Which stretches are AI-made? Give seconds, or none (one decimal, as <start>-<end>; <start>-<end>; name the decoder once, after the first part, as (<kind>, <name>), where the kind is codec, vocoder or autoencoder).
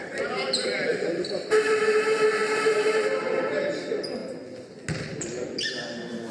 0.0-4.2 (vocoder, BigVGAN v2); 5.1-6.3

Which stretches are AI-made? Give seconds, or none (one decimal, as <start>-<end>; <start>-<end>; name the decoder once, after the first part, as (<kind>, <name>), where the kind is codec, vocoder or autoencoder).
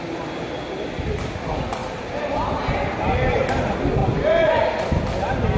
1.8-2.7 (vocoder, BigVGAN v2)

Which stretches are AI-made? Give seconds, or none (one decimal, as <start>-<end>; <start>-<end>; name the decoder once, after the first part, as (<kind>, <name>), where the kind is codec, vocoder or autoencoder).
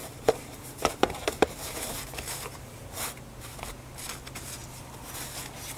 0.0-3.5 (vocoder, BigVGAN v2)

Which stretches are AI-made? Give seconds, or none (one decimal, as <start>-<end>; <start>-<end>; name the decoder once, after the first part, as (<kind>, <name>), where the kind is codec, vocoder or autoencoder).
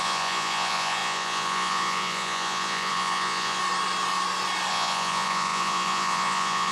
0.0-3.6 (vocoder, Vocos); 4.7-6.7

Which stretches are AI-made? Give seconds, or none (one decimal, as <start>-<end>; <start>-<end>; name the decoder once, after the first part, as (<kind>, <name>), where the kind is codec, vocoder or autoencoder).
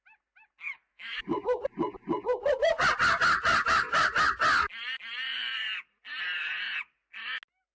0.9-1.6 (autoencoder, DAC-VAE)